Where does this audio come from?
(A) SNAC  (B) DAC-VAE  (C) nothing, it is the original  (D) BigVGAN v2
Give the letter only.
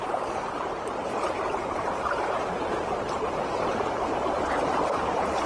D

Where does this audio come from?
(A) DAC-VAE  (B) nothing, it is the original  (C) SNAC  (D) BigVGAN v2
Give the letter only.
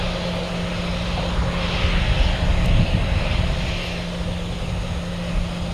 B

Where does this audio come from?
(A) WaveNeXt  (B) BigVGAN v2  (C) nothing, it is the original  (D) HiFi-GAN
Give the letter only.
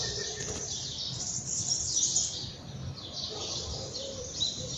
B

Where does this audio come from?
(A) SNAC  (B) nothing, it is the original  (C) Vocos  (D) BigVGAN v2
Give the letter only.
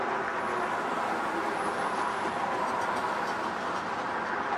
D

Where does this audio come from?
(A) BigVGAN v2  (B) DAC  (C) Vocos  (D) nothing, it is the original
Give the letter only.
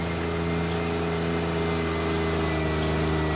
D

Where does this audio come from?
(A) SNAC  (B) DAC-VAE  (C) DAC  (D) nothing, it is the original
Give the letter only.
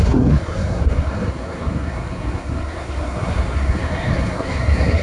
A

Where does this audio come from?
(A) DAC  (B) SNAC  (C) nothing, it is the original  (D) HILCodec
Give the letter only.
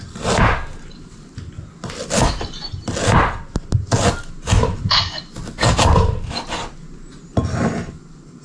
C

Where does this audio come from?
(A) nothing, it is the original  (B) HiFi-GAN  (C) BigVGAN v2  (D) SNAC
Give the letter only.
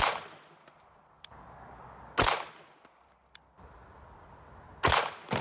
A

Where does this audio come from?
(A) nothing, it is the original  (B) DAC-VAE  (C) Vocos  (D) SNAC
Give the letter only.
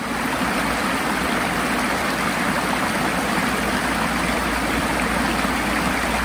A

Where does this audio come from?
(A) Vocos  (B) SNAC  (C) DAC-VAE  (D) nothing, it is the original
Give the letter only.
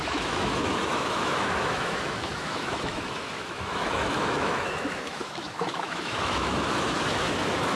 C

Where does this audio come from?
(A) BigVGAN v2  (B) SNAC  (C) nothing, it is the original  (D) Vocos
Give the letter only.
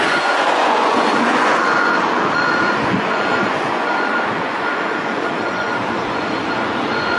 D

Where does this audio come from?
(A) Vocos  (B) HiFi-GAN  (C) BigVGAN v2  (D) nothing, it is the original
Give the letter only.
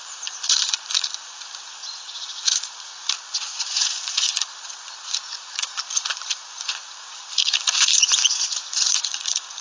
A